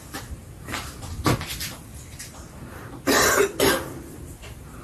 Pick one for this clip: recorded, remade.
recorded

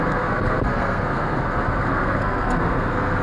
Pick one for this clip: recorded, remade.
remade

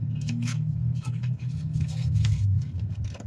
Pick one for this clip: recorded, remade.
remade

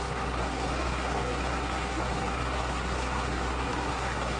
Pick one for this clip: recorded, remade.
remade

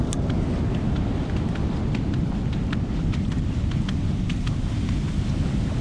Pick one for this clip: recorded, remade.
recorded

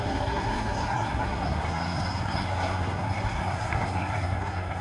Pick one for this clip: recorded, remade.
remade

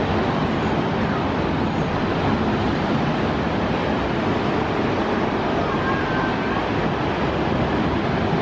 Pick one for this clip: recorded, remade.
recorded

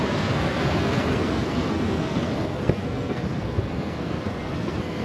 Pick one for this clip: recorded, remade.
remade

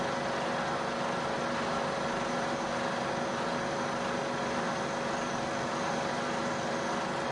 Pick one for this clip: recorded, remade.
recorded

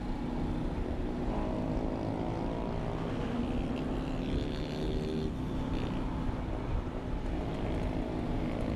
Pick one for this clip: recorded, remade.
recorded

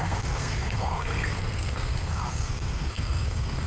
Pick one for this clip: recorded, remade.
remade